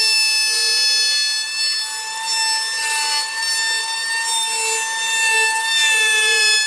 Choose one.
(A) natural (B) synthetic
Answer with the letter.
A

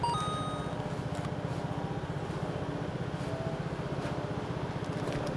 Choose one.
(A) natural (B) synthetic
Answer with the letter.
A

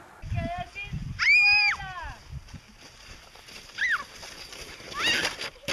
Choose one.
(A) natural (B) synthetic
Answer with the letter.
A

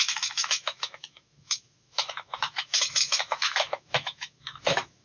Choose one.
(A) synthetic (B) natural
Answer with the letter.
A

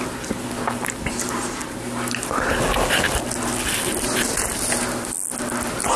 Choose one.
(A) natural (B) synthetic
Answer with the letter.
A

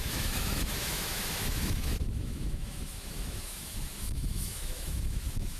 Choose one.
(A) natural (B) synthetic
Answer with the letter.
B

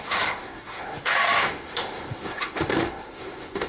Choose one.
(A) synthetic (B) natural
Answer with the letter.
A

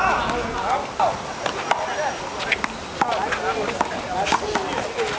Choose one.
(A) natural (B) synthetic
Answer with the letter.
A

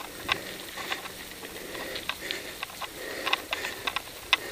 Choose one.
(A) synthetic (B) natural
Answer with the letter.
B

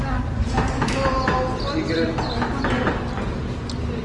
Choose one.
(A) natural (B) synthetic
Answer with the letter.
A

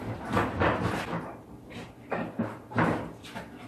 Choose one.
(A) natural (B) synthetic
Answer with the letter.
A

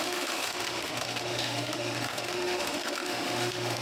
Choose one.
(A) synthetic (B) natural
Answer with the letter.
A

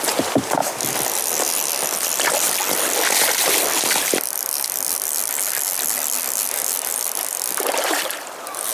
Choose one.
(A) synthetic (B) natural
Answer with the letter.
B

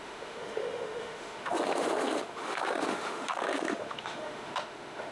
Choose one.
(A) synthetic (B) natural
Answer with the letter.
A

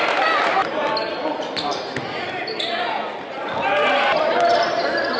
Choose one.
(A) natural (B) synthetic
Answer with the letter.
A